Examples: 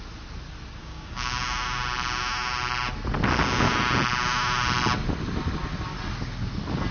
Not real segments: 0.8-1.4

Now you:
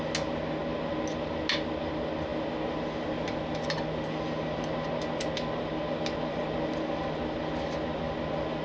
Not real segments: none

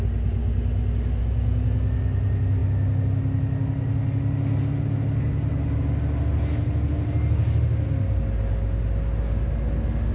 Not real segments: none

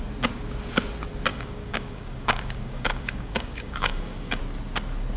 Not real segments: 1.3-4.4